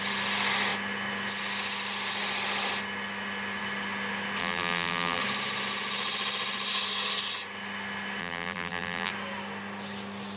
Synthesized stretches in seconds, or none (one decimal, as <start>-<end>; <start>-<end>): 4.4-5.2; 8.2-9.1